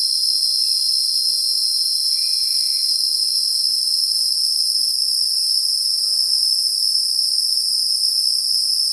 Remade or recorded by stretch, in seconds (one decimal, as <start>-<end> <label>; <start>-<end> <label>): 0.0-2.5 recorded; 2.5-5.3 remade; 5.3-8.9 recorded